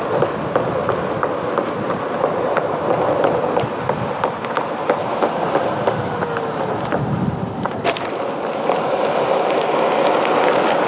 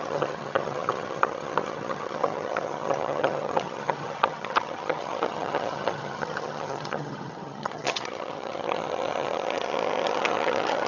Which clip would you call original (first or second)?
first